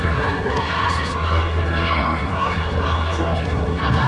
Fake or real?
fake